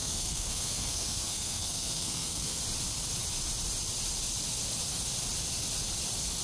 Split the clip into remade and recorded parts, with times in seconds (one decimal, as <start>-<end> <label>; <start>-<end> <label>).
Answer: 0.0-2.6 remade; 2.6-6.4 recorded